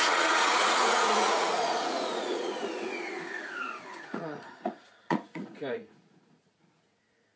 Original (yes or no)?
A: no